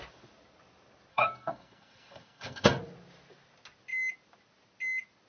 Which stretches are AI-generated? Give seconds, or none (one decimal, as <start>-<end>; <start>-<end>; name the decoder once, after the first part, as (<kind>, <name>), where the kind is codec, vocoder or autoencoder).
1.1-2.8 (codec, SNAC)